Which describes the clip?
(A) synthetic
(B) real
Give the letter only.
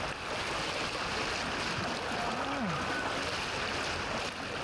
B